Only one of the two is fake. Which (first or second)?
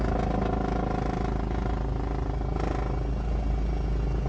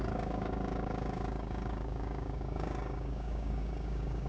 second